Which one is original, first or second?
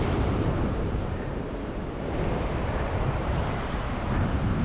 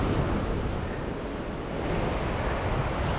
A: second